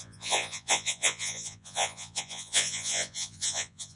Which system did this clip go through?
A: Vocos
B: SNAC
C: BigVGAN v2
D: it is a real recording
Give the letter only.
A